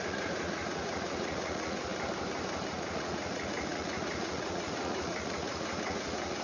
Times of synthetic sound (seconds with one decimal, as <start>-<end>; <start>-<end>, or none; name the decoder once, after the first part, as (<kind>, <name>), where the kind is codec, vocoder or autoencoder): 0.0-1.9 (vocoder, Vocos); 2.7-6.4

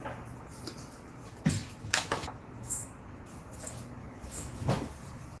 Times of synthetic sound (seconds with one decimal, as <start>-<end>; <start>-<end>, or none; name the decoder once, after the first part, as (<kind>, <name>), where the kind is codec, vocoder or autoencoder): 1.8-2.9 (autoencoder, DAC-VAE); 4.0-4.9

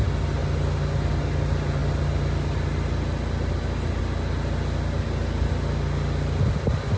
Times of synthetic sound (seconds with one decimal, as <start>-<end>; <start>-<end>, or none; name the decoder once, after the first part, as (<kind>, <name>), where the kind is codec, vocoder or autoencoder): none

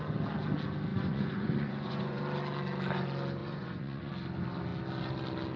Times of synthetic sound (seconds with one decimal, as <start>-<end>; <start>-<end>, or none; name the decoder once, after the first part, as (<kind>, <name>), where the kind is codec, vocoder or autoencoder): 0.9-2.2 (vocoder, Vocos); 3.4-4.1

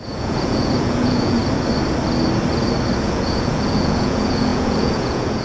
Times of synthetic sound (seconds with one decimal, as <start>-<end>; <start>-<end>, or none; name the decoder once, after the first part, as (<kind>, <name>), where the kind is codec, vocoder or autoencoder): 0.0-1.4 (vocoder, Vocos); 3.0-5.4

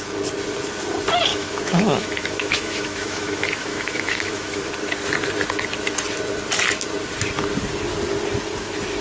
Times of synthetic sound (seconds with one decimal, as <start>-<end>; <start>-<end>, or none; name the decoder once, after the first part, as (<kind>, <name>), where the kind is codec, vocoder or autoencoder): 1.3-4.7 (autoencoder, DAC-VAE)

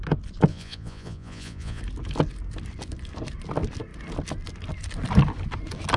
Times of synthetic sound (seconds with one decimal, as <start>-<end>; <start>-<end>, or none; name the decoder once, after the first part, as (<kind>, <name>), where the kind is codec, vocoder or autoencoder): 0.5-1.8 (vocoder, Vocos)

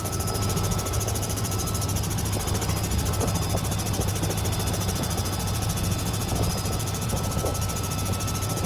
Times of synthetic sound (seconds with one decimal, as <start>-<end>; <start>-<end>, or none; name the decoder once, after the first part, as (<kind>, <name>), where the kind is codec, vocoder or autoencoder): 0.0-1.6 (vocoder, Vocos); 4.7-8.7